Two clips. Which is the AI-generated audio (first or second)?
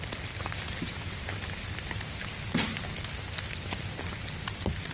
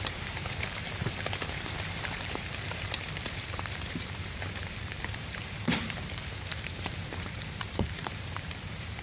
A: second